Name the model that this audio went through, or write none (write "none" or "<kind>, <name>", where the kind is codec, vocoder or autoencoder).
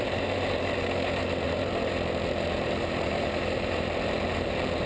vocoder, BigVGAN v2